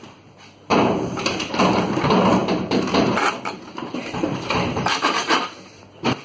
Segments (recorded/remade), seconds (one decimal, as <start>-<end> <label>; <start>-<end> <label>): 0.0-0.7 recorded; 0.7-1.6 remade; 1.6-2.4 recorded; 2.4-6.2 remade